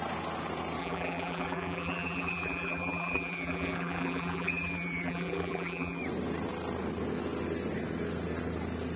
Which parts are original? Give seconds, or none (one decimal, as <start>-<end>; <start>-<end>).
0.0-0.8; 6.0-9.0